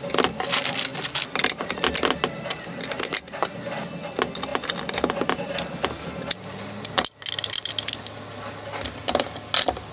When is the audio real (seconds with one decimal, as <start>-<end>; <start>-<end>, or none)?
0.0-9.9